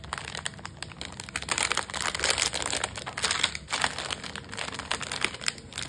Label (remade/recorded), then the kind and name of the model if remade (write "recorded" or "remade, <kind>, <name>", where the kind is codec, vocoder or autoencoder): recorded